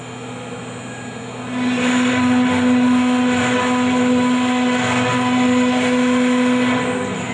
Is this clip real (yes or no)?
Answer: yes